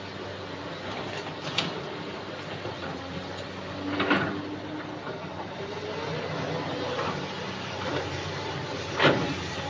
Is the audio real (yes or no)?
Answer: yes